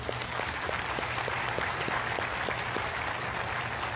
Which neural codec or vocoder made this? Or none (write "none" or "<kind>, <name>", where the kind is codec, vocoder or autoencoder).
none